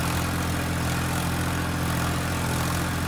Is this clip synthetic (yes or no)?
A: no